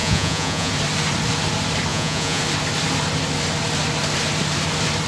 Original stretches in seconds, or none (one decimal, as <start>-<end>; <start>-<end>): 0.7-1.9; 2.4-5.1